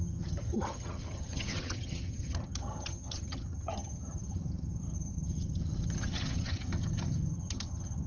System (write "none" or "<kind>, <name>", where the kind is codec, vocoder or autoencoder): vocoder, HiFi-GAN